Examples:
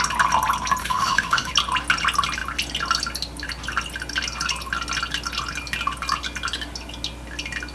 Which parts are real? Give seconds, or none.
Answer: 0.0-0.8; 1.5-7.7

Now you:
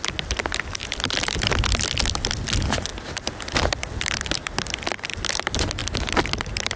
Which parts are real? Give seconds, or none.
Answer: 0.0-0.8; 1.5-2.9; 4.3-6.8

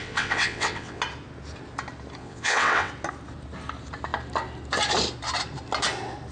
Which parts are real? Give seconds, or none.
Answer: 1.0-2.2; 2.9-6.3

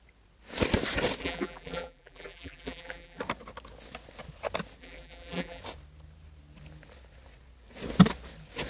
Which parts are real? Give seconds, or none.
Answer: 0.0-1.2; 3.2-4.8; 5.6-8.7

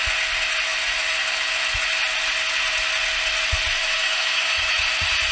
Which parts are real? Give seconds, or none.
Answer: 0.0-3.8; 4.8-5.3

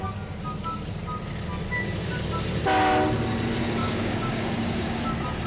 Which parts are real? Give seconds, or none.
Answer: 0.0-3.8; 5.1-5.5